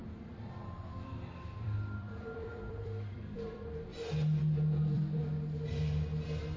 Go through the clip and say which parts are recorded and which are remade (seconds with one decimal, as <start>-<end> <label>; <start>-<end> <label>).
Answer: 0.0-3.9 remade; 3.9-4.8 recorded; 4.8-5.2 remade; 5.2-6.6 recorded